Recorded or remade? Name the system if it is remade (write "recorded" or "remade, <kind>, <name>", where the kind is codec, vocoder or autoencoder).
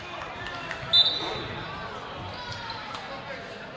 recorded